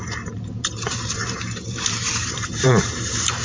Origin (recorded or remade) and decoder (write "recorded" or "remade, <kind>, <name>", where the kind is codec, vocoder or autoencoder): remade, vocoder, BigVGAN v2